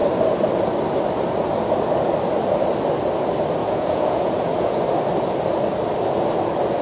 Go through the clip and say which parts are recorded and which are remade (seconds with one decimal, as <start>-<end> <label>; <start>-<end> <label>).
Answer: 0.0-3.6 recorded; 3.6-4.8 remade; 4.8-6.8 recorded